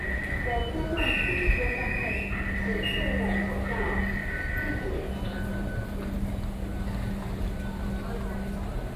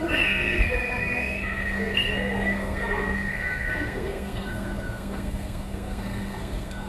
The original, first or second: first